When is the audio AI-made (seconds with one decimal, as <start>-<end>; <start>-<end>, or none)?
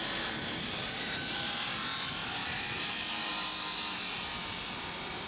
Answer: 2.2-3.3